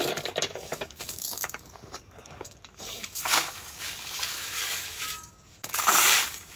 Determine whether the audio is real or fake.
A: fake